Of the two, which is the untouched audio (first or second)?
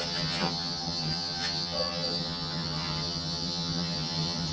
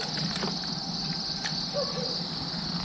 second